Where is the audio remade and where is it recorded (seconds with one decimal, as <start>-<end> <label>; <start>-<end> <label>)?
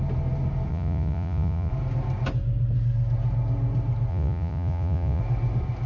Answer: 0.0-0.7 recorded; 0.7-1.7 remade; 1.7-4.1 recorded; 4.1-5.2 remade; 5.2-5.9 recorded